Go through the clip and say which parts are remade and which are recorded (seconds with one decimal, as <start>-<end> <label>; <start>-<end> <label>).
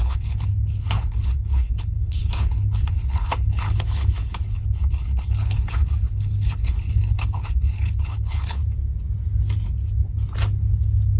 0.0-8.6 remade; 8.6-11.2 recorded